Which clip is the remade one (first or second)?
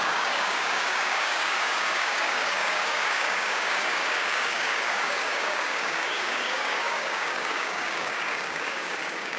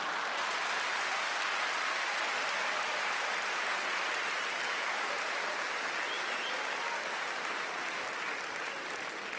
first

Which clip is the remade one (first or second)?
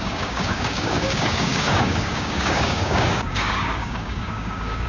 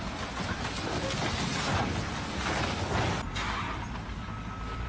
first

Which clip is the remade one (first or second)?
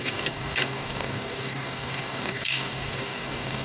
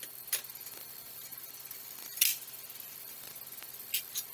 first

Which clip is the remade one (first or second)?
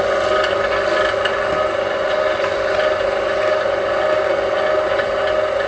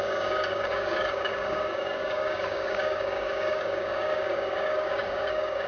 second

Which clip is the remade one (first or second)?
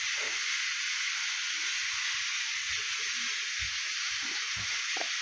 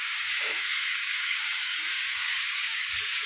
second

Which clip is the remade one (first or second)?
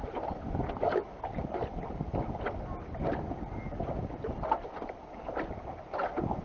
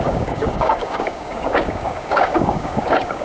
second